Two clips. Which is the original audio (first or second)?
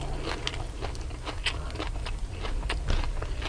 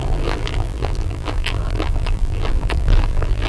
first